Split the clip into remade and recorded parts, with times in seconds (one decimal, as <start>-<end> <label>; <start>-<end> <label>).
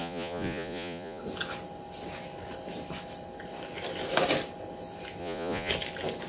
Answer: 0.0-1.2 remade; 1.2-5.2 recorded; 5.2-5.7 remade; 5.7-6.3 recorded